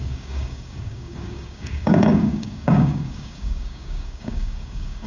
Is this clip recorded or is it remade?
remade